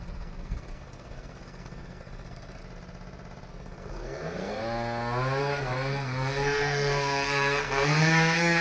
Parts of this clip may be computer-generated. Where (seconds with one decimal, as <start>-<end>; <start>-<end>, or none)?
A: 0.0-2.6; 3.5-4.6; 5.4-8.6